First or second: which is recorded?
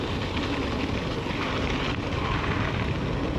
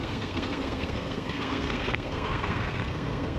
first